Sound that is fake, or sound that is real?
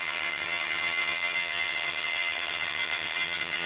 fake